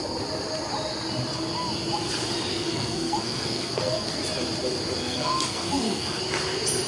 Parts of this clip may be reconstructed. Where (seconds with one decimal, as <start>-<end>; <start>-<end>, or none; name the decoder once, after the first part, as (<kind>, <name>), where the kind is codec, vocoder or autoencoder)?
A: 2.5-4.2 (codec, SNAC); 5.0-6.2